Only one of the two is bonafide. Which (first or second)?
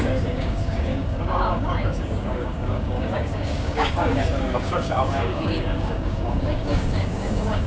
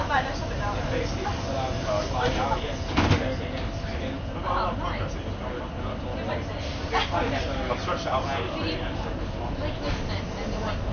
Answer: second